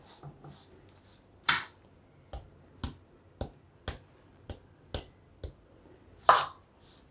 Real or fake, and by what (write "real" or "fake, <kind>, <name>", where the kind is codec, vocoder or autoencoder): real